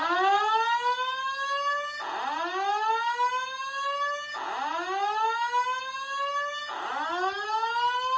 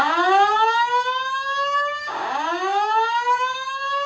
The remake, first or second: second